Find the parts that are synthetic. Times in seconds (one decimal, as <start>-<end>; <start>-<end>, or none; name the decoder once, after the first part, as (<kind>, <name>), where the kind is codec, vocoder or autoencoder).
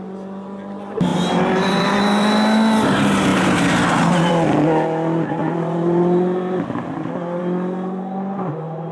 5.4-7.4 (vocoder, BigVGAN v2)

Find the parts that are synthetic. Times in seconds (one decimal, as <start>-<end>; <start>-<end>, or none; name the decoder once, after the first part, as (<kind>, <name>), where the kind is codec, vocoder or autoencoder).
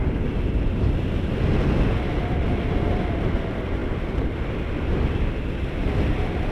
none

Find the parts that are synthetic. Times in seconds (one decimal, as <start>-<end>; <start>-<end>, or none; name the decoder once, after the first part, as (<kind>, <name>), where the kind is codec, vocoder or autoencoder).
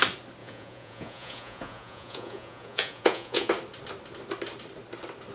0.4-3.5 (vocoder, Vocos)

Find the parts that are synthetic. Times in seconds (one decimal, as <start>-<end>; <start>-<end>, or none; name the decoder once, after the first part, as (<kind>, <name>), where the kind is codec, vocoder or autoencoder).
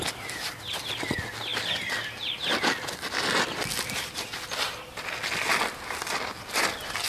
none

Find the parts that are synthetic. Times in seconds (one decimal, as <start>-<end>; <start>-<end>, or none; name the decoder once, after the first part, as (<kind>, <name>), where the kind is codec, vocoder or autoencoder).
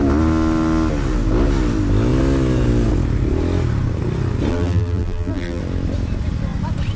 4.5-5.6 (vocoder, BigVGAN v2)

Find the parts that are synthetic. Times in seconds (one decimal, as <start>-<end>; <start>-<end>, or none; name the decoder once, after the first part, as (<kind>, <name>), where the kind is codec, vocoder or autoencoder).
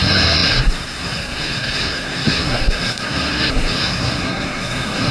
0.0-5.1 (codec, SNAC)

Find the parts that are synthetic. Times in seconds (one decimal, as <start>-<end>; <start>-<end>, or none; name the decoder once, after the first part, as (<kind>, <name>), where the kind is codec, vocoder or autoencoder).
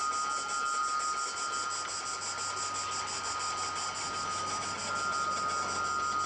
none